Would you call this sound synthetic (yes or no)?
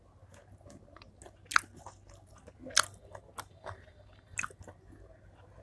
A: no